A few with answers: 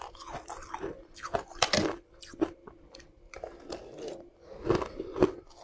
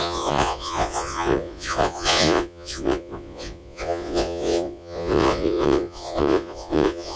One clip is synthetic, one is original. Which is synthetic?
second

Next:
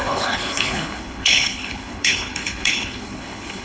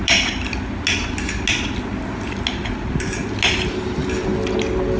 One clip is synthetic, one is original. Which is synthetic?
first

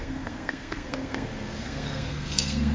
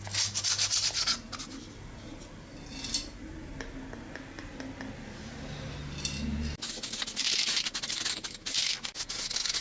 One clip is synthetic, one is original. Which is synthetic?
first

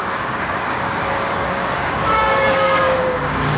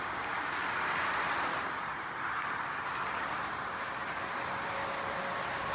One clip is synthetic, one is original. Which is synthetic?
first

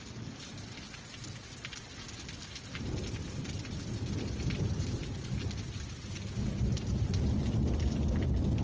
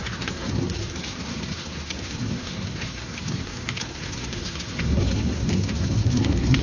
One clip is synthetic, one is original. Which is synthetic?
second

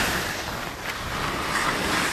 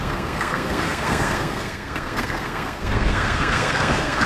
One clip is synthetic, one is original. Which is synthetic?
second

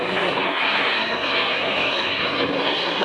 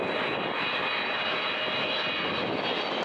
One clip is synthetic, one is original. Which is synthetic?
first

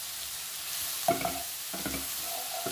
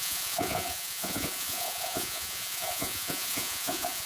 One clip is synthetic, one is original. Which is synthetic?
second